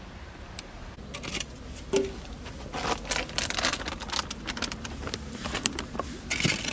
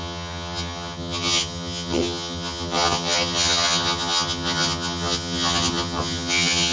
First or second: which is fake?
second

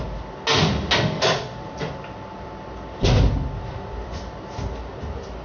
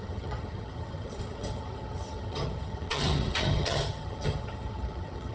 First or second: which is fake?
second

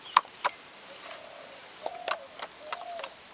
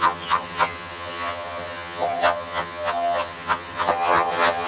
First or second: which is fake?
second